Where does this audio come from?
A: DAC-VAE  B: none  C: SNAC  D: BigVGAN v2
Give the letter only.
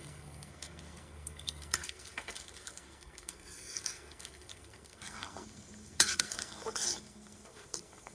C